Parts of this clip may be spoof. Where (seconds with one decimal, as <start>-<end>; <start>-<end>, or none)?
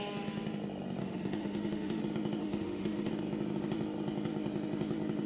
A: 1.0-2.0; 2.4-3.1